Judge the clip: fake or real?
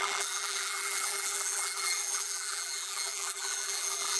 fake